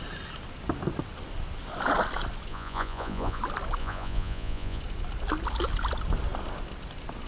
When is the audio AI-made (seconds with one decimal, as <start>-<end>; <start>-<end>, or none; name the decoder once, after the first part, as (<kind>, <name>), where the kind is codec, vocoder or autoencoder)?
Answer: 2.5-3.4 (vocoder, Vocos); 3.8-4.8

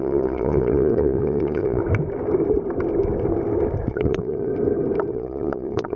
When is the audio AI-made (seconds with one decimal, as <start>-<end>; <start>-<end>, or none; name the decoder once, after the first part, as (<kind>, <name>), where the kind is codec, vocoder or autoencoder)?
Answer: 0.0-1.8 (vocoder, Vocos); 3.9-4.5; 5.1-6.0